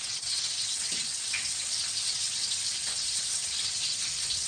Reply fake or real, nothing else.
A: fake